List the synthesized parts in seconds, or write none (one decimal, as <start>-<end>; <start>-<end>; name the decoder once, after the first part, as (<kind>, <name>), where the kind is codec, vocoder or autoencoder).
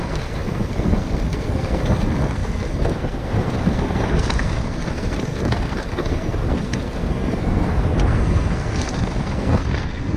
0.0-10.2 (codec, SNAC)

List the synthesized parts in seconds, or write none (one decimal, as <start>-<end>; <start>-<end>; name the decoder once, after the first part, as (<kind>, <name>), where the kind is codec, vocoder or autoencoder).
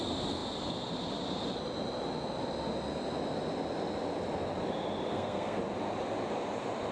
5.1-5.6 (codec, SNAC)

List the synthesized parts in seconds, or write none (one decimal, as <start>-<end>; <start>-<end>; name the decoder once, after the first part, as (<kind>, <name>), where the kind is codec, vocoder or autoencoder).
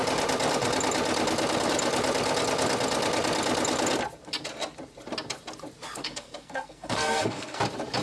6.0-7.6 (codec, SNAC)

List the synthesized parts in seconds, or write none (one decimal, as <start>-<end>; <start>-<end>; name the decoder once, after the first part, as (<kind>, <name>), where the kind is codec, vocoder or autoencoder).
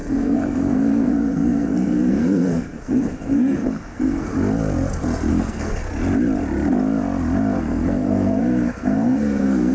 0.0-4.3 (codec, SNAC); 5.3-5.8; 7.6-9.7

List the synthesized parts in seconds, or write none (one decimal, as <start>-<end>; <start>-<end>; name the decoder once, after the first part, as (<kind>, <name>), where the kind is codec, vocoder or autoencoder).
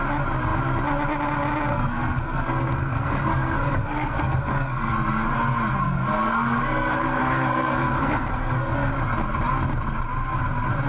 1.7-4.9 (codec, SNAC); 5.8-8.9